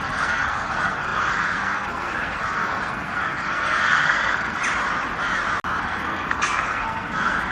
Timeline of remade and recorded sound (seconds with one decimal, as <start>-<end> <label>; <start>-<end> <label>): 0.0-4.6 remade; 4.6-5.8 recorded; 5.8-7.5 remade